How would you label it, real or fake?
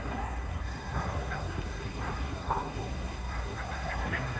fake